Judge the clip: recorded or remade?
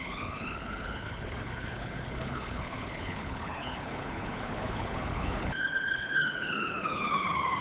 remade